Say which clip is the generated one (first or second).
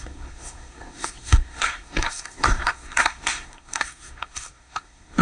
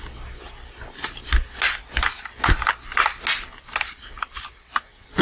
first